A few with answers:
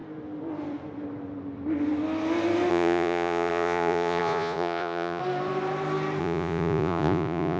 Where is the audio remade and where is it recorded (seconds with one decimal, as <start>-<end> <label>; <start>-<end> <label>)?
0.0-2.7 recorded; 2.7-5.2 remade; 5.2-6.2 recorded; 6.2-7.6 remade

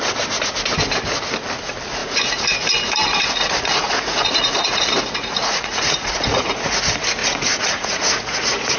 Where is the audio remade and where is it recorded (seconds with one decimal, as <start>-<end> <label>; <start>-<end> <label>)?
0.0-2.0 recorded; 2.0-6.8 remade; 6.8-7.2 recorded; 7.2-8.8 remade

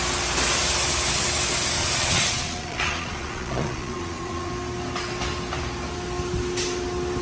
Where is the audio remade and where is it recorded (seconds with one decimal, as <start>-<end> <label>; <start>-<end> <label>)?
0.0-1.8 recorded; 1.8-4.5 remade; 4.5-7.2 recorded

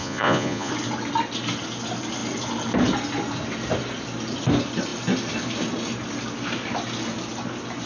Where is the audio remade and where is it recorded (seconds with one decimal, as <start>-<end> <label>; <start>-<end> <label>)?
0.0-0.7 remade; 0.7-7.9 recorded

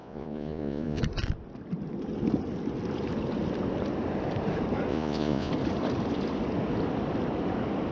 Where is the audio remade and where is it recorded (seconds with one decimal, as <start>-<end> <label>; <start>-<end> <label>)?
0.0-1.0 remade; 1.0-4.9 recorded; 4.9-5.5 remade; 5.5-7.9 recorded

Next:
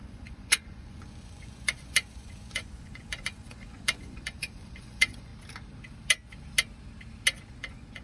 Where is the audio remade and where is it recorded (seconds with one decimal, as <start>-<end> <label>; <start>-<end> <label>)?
0.0-5.3 remade; 5.3-7.5 recorded; 7.5-8.0 remade